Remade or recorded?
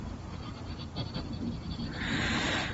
recorded